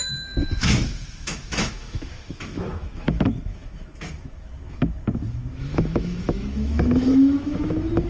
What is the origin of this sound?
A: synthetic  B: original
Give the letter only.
A